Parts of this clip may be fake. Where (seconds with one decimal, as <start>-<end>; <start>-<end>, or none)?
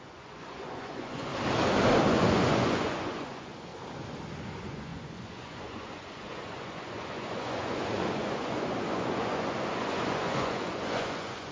0.0-1.3; 2.1-3.7; 4.4-11.5